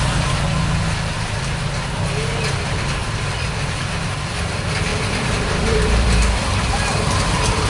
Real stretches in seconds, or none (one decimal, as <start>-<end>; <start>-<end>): 0.0-3.0; 3.9-4.9; 6.2-7.7

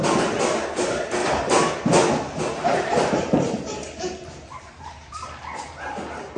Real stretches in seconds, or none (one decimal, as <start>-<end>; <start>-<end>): 0.0-3.8; 5.7-6.4

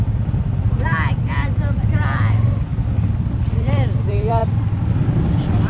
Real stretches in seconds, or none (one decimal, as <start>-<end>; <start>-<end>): 2.7-3.3; 4.4-4.9

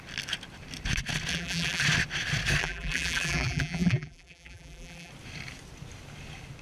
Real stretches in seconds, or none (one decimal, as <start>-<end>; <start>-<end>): 0.0-1.3; 1.8-2.6; 5.1-6.6